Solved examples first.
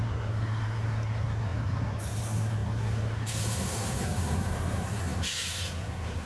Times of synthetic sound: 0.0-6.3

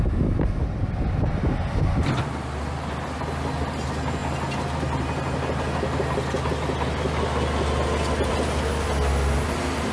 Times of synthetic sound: none

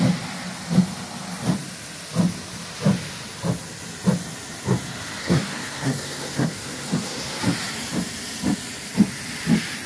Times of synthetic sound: 5.2-7.4

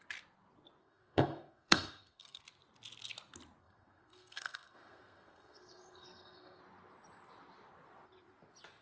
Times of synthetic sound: 0.8-2.4; 3.6-6.6

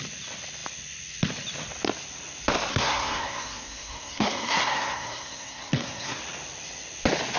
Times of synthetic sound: 2.7-6.2

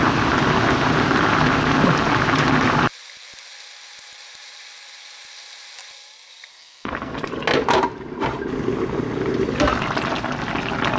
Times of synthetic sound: 6.5-7.3

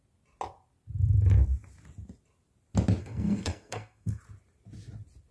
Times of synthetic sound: 3.0-4.2